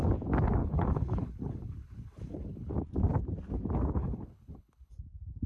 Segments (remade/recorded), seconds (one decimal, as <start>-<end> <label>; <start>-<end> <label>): 0.0-0.6 recorded; 0.6-2.7 remade; 2.7-4.0 recorded; 4.0-4.9 remade; 4.9-5.5 recorded